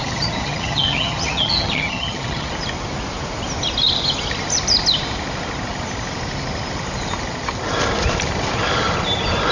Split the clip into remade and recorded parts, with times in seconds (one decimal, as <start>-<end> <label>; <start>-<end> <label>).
0.0-2.5 remade; 2.5-9.5 recorded